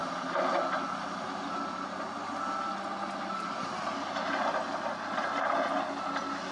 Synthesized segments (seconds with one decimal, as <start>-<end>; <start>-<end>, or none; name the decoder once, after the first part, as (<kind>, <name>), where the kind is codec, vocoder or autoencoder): none